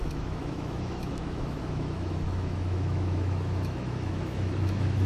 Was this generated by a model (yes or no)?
yes